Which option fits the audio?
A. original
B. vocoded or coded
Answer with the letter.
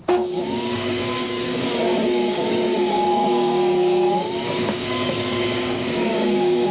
B